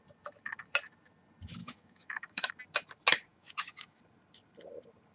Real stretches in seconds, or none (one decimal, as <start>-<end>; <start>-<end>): 0.0-1.6; 2.5-3.3; 4.0-5.1